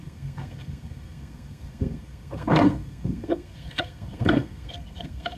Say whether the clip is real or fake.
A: fake